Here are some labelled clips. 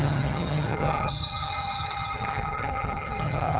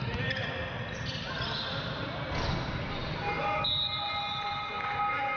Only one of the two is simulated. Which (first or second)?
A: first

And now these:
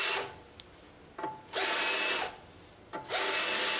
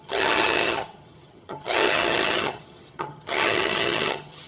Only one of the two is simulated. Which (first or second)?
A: second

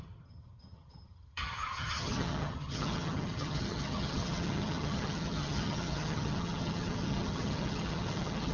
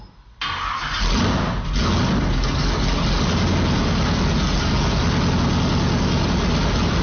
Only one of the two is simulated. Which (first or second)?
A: first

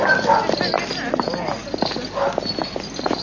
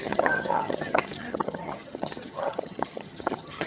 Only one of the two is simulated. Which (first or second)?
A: second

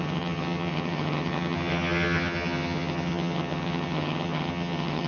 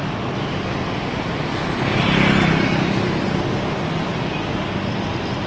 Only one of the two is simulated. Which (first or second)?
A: first